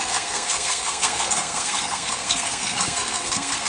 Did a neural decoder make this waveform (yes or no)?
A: yes